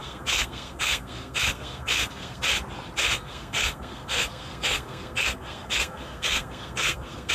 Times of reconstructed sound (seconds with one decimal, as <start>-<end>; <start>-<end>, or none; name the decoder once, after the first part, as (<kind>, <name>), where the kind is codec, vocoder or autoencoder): 0.0-2.4 (codec, SNAC); 3.0-7.3